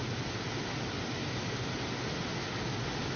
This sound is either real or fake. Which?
real